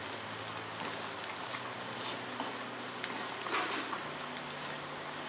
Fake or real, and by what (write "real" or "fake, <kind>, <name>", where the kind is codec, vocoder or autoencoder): real